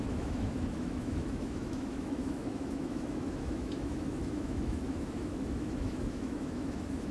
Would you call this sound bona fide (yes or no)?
no